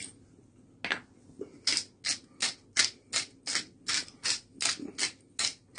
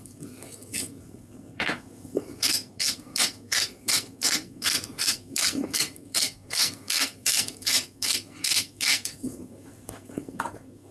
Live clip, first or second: first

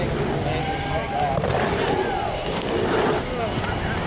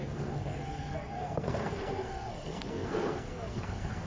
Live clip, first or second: first